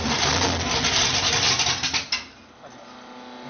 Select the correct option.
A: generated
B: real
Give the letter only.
B